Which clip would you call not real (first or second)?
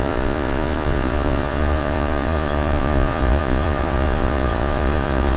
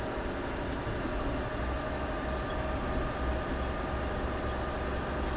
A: first